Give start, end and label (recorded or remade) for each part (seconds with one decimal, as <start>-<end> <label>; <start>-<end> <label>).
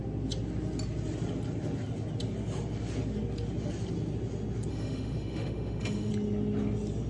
0.0-4.7 recorded; 4.7-6.1 remade; 6.1-7.1 recorded